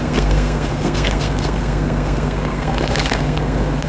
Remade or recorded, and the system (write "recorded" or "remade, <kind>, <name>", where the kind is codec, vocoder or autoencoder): remade, codec, SNAC